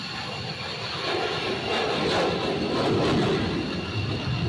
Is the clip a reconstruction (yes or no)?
no